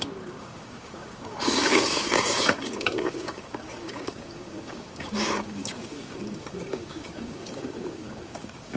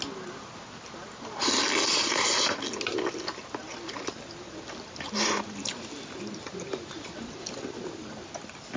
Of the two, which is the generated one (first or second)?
first